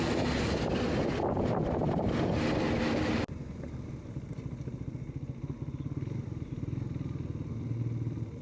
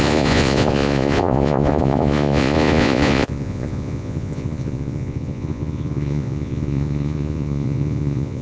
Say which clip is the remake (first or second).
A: second